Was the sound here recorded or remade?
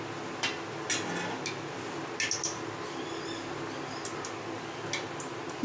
recorded